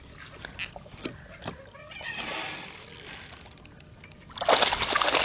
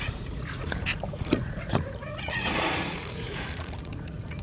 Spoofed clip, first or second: second